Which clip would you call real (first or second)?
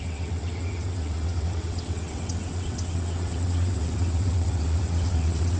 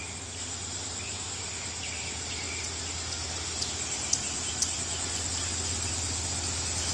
second